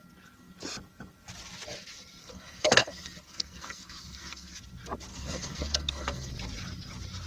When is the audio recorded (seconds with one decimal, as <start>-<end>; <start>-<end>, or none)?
0.0-2.2; 4.6-5.1; 6.3-7.3